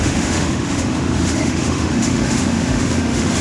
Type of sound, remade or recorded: remade